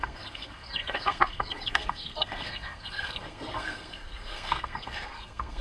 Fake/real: fake